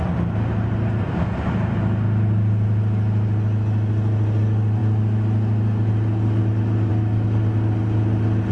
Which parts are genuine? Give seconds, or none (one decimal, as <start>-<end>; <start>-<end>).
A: 0.0-8.5